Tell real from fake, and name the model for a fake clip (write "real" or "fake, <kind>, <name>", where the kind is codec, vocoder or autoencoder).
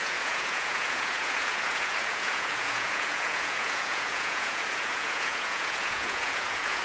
fake, vocoder, Vocos